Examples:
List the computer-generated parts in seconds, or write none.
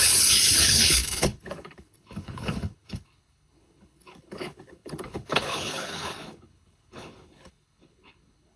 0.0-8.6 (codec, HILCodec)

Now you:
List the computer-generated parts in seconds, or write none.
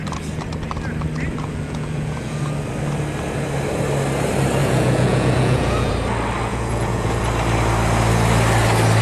1.3-2.4 (vocoder, Vocos); 4.6-5.9; 6.5-7.2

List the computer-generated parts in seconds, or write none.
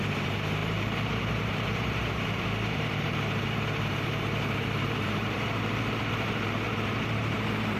0.0-7.8 (vocoder, BigVGAN v2)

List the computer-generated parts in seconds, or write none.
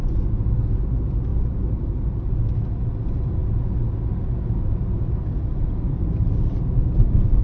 none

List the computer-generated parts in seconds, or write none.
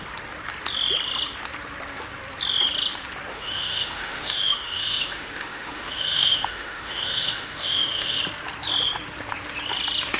3.3-8.2 (autoencoder, DAC-VAE)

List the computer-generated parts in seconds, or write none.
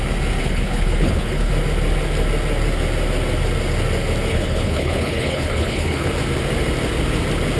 0.4-1.5 (codec, HILCodec); 4.3-6.1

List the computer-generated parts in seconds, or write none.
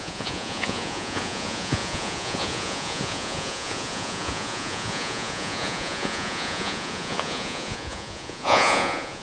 0.0-9.2 (vocoder, Vocos)